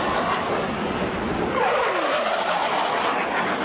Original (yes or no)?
yes